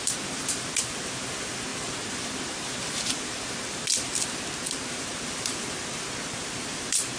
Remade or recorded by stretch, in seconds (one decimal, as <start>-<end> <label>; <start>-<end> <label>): 0.0-7.2 recorded